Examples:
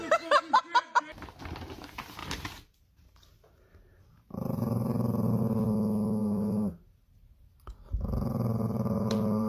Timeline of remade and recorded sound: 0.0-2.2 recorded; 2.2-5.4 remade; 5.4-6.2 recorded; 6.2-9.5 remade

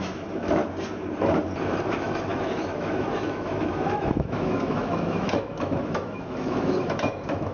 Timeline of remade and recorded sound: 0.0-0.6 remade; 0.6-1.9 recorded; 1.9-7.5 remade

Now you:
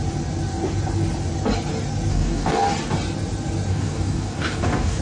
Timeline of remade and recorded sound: 0.0-2.1 recorded; 2.1-2.7 remade; 2.7-3.7 recorded; 3.7-5.0 remade

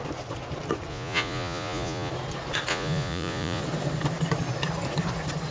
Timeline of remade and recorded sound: 0.0-0.9 recorded; 0.9-2.1 remade; 2.1-2.7 recorded; 2.7-3.6 remade; 3.6-5.5 recorded